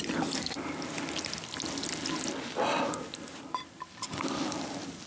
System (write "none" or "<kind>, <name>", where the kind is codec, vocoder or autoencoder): none